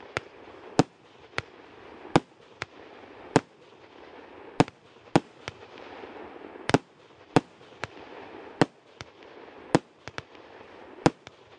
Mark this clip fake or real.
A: real